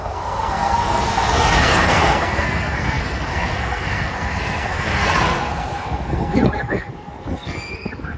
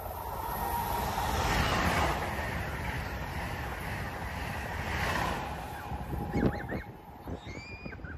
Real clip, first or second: second